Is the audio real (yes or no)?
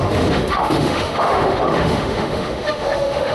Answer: no